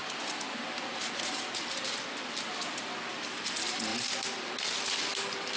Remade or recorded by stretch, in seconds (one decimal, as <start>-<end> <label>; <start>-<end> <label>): 0.0-5.6 recorded